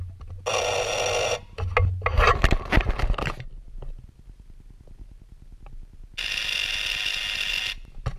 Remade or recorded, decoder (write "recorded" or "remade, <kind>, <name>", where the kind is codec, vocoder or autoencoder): recorded